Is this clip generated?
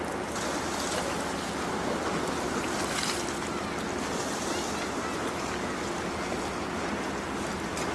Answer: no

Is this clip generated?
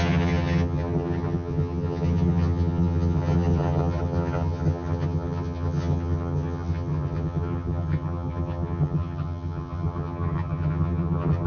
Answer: yes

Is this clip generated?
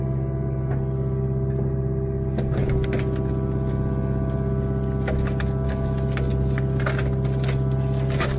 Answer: no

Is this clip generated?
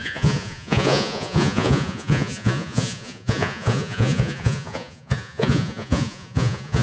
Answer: yes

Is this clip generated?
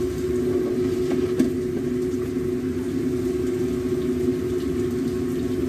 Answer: no